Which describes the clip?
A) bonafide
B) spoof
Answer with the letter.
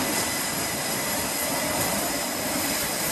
A